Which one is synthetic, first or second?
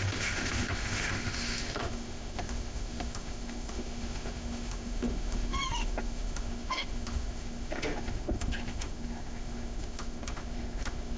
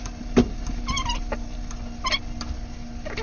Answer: first